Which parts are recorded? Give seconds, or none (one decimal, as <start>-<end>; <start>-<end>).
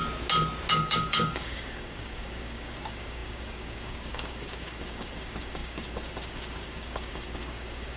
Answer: 0.0-0.7